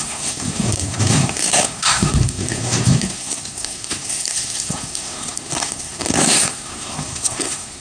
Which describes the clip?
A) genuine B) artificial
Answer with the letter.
B